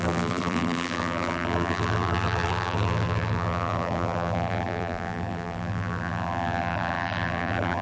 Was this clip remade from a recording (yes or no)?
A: yes